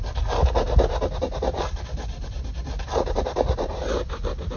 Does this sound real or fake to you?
real